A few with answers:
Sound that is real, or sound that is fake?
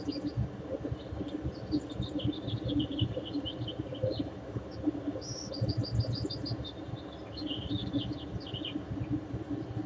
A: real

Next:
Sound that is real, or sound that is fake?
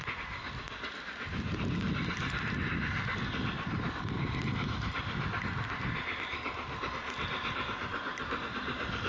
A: real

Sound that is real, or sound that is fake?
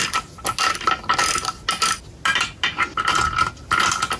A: real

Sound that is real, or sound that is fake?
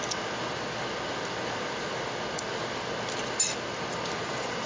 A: real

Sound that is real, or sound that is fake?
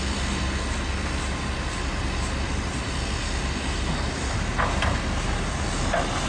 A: real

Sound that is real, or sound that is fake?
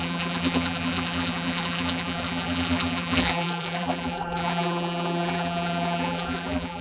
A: fake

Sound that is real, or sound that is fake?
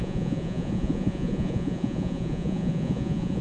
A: fake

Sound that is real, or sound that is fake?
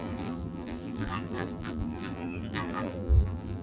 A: fake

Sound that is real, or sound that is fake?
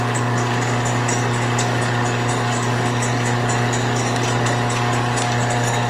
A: fake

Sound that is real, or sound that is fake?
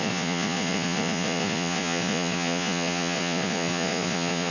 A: fake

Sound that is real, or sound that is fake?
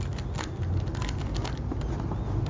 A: real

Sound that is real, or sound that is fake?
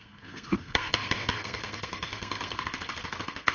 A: fake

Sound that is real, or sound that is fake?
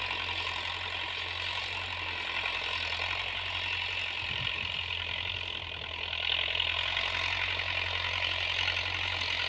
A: real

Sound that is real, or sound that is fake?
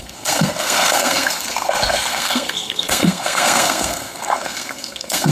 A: fake